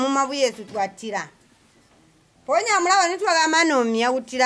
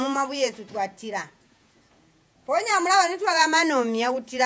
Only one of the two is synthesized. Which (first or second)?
second